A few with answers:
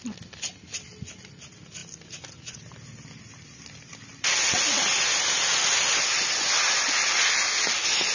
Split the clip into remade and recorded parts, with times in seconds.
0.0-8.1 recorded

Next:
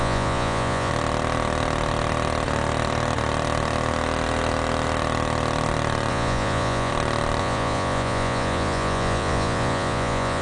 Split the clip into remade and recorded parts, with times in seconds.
0.0-0.9 remade; 0.9-6.1 recorded; 6.1-6.9 remade; 6.9-7.4 recorded; 7.4-10.4 remade

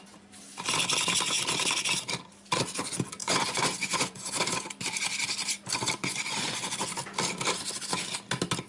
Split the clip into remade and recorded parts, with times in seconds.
0.0-3.2 recorded; 3.2-4.4 remade; 4.4-6.0 recorded; 6.0-6.7 remade; 6.7-8.7 recorded

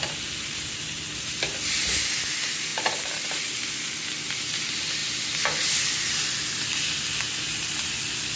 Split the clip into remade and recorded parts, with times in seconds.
0.0-8.4 recorded